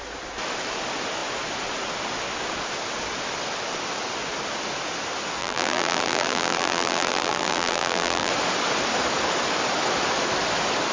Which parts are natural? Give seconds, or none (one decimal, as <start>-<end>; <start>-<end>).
0.0-5.4; 8.3-10.9